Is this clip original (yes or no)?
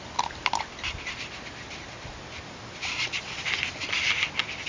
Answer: yes